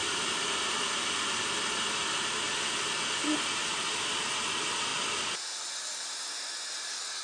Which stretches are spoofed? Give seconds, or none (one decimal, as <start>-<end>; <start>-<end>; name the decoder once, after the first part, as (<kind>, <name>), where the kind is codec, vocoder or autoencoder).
0.0-0.9 (vocoder, BigVGAN v2)